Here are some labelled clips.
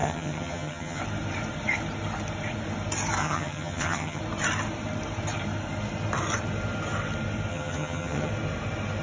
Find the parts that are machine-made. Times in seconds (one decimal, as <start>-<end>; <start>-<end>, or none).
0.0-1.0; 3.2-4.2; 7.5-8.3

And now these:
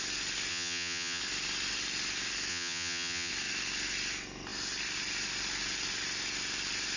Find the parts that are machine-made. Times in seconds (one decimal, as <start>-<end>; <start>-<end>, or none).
0.5-1.2; 2.5-3.3

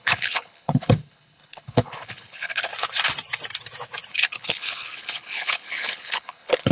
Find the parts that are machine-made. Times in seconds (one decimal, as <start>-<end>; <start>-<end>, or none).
0.0-2.7; 4.1-6.7